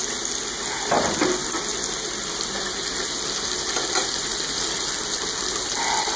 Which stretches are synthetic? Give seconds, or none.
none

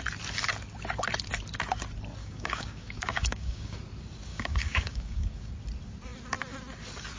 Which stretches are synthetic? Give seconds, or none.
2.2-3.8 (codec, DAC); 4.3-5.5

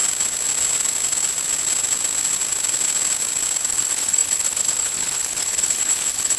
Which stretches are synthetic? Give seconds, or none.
3.7-6.4 (codec, HILCodec)

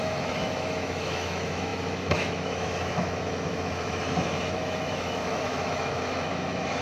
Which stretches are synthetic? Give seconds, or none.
0.0-6.8 (autoencoder, DAC-VAE)

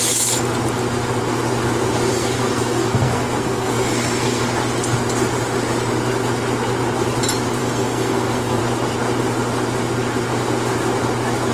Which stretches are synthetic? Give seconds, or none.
2.1-4.4 (codec, SNAC); 7.6-8.6

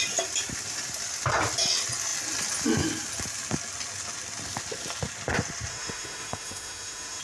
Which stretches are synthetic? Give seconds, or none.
5.7-7.2 (autoencoder, DAC-VAE)

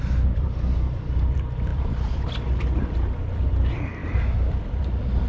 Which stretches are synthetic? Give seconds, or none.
0.0-5.3 (vocoder, BigVGAN v2)